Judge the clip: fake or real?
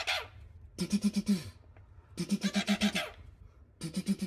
real